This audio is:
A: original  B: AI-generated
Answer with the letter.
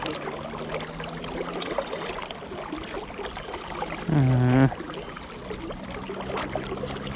A